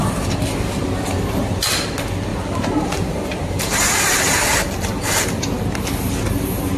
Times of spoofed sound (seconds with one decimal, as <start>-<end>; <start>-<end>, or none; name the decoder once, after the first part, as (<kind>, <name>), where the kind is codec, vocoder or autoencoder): 0.0-0.8 (vocoder, BigVGAN v2); 2.3-5.4